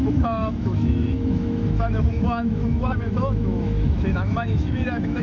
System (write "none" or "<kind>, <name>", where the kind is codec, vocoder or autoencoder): autoencoder, DAC-VAE